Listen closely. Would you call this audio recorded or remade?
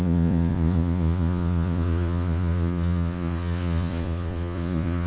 remade